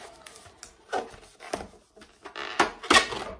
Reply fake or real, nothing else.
real